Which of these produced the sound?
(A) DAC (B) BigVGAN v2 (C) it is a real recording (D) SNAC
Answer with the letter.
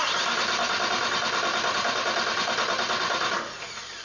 B